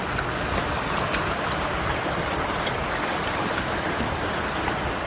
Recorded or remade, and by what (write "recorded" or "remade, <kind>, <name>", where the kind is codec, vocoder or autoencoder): recorded